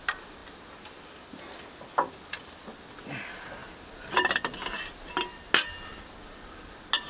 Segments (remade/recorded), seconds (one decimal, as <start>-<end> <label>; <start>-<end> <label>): 0.0-7.1 recorded